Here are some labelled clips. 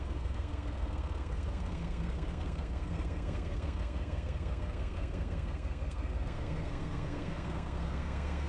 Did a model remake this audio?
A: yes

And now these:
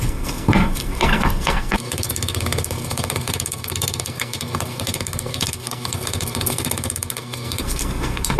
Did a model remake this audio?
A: yes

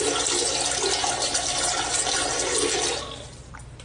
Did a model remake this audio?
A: no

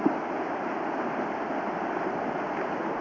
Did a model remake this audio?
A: no